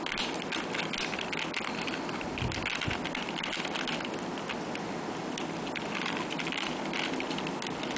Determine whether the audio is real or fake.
real